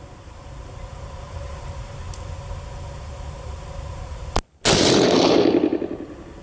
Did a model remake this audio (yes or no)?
no